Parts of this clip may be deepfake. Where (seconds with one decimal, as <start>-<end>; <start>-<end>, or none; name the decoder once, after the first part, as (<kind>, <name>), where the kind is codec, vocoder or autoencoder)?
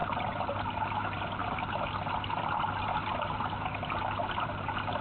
none